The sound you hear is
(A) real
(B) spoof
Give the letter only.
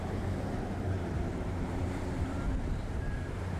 B